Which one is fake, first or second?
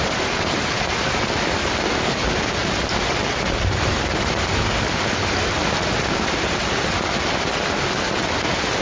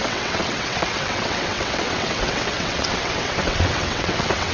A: second